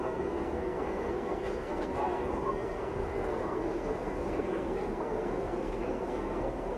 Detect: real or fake fake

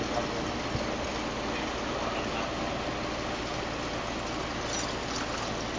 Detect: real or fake real